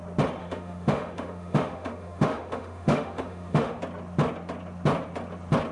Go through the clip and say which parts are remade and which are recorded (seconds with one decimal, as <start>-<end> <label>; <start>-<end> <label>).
0.0-0.4 recorded; 0.4-3.8 remade; 3.8-5.7 recorded